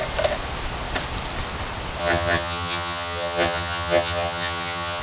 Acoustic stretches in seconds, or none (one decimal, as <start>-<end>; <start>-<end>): 0.0-2.0